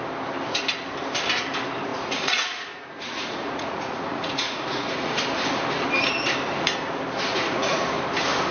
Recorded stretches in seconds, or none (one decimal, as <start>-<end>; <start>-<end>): 0.0-1.9; 5.2-7.3; 7.9-8.5

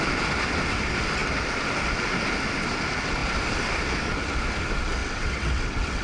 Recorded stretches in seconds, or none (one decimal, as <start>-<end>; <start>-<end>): 0.0-5.0